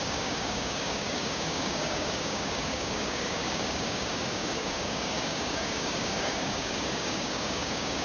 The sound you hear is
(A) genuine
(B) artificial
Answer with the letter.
B